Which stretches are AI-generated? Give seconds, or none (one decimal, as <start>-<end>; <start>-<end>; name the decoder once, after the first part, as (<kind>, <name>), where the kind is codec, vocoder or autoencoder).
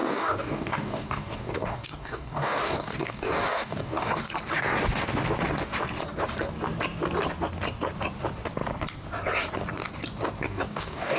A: 0.0-4.2 (codec, DAC); 10.4-11.2